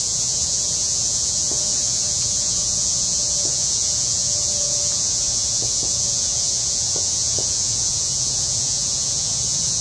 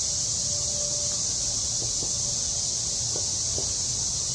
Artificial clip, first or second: first